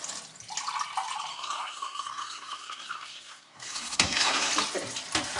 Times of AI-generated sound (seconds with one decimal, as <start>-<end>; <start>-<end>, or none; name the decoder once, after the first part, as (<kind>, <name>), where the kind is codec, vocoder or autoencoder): 1.3-4.5 (codec, SNAC)